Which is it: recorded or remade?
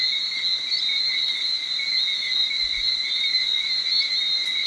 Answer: recorded